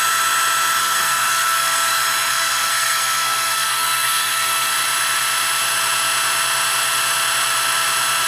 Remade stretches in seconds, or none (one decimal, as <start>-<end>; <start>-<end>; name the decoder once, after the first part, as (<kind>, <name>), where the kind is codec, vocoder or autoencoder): 0.8-1.9 (codec, SNAC); 2.3-4.7